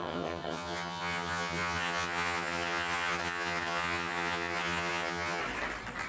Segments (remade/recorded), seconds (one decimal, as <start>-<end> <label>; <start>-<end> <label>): 0.0-5.4 remade; 5.4-6.1 recorded